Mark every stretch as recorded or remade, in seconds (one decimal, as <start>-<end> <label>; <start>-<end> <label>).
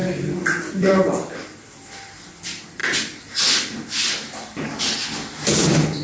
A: 0.0-2.8 remade; 2.8-4.8 recorded; 4.8-6.0 remade